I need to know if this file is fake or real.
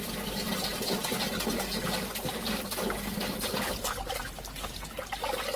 real